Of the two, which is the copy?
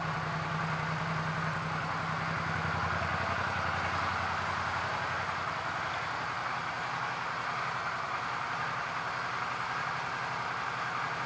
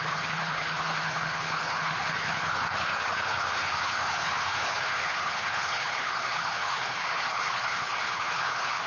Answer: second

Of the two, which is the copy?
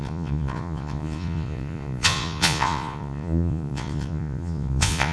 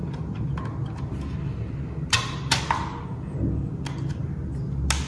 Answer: first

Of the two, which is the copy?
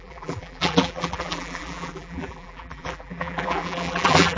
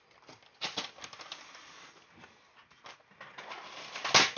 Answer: first